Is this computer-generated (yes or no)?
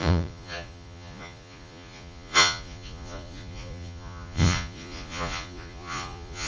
yes